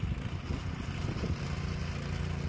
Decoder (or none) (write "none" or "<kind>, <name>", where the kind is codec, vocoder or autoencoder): none